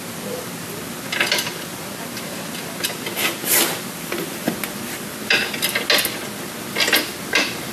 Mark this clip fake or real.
real